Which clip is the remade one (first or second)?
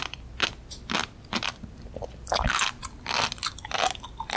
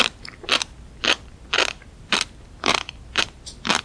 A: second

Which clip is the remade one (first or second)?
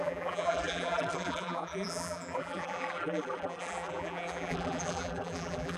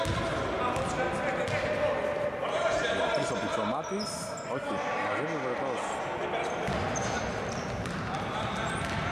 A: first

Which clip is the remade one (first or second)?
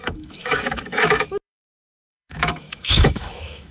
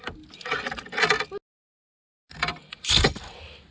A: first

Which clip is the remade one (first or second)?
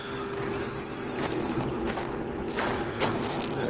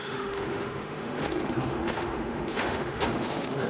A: second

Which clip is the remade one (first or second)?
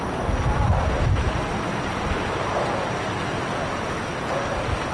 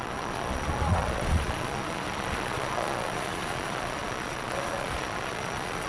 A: second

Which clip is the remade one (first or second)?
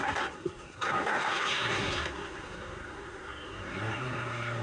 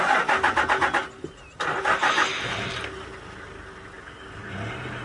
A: first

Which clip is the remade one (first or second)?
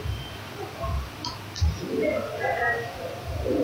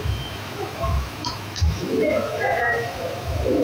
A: second